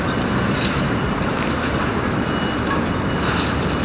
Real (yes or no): yes